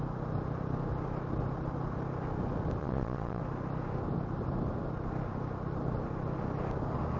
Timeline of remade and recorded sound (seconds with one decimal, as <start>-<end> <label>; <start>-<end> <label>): 0.0-2.8 recorded; 2.8-3.4 remade; 3.4-7.2 recorded